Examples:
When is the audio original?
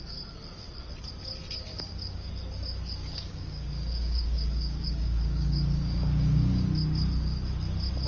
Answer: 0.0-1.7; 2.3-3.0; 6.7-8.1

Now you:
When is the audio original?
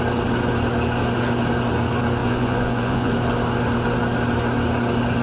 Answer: 0.0-2.2; 3.1-5.2